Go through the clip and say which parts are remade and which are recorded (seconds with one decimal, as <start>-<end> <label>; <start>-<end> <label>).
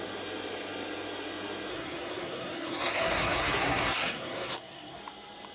0.0-1.7 recorded; 1.7-5.0 remade; 5.0-5.5 recorded